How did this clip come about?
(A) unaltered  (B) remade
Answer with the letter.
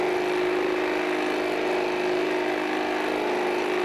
A